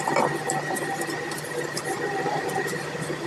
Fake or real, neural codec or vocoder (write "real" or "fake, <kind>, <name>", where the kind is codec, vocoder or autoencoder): real